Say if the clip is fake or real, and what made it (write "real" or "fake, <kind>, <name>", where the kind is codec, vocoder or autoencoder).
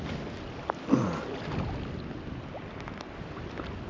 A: real